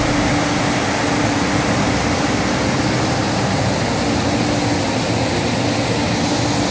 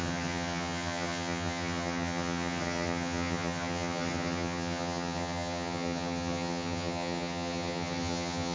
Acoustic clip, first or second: first